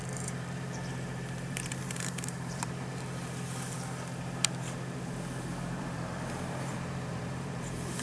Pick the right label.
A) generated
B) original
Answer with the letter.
A